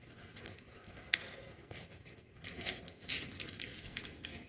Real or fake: fake